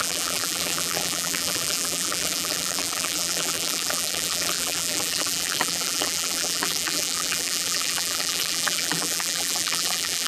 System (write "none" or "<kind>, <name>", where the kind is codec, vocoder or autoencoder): vocoder, BigVGAN v2